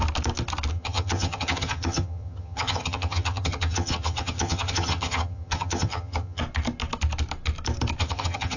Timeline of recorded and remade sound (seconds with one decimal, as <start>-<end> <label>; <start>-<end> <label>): 0.0-0.7 recorded; 0.7-6.4 remade; 6.4-8.0 recorded; 8.0-8.6 remade